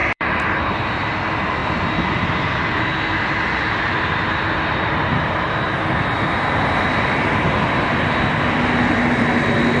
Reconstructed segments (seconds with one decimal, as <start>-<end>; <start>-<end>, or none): 0.0-0.7